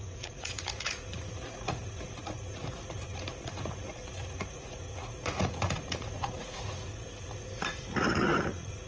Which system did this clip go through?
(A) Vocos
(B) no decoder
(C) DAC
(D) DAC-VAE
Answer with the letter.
A